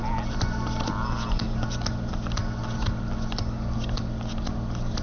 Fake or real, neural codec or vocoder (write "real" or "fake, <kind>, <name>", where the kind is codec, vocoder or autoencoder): real